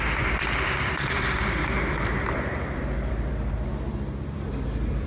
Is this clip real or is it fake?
fake